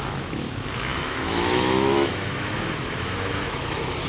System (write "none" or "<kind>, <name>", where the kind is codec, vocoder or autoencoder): autoencoder, DAC-VAE